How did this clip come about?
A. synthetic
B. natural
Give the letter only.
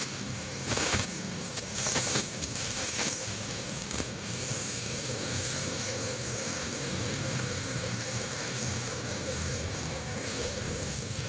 A